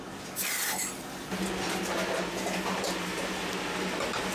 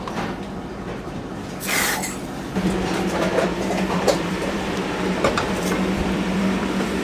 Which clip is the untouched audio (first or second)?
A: first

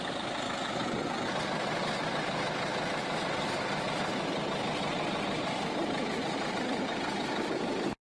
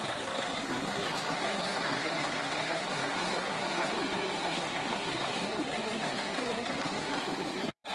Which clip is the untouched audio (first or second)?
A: first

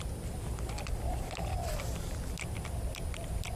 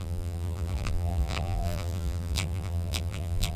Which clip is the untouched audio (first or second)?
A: first